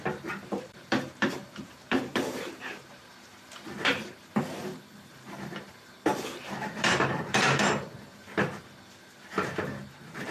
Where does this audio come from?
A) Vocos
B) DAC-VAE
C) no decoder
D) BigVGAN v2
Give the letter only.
D